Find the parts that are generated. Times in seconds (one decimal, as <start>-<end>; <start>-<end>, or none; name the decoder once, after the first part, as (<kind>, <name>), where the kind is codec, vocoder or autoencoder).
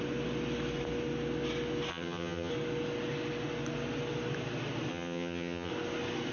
1.9-2.5 (vocoder, HiFi-GAN); 4.9-5.7